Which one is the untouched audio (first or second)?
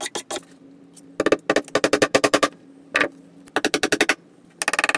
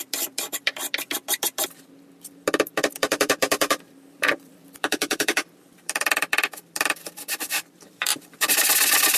first